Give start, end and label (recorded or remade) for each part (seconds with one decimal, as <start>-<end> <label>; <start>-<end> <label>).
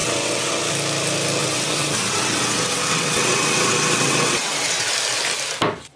0.0-0.6 remade; 0.6-1.4 recorded; 1.4-4.9 remade; 4.9-6.0 recorded